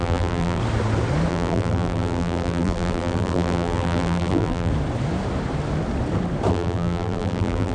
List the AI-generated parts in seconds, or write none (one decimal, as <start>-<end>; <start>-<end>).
0.0-0.6; 1.3-4.7; 6.5-7.7